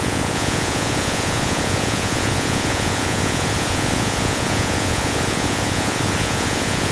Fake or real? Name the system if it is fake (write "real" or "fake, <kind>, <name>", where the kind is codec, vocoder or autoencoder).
fake, vocoder, Vocos